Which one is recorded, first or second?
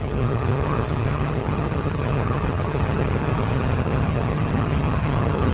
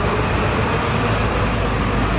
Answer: second